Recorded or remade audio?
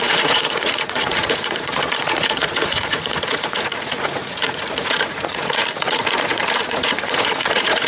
remade